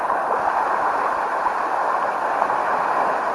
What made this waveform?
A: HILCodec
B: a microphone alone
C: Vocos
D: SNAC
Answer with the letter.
B